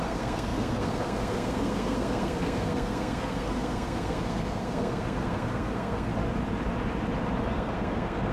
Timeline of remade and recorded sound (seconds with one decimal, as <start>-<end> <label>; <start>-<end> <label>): 0.0-6.1 remade; 6.1-7.5 recorded; 7.5-8.3 remade